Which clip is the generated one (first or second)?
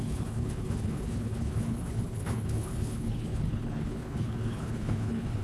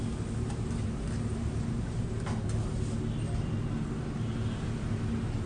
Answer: first